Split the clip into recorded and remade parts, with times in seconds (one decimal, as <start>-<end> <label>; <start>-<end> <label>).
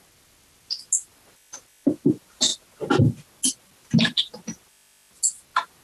0.0-5.8 recorded